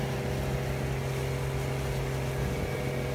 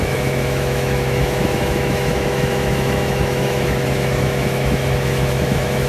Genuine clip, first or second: first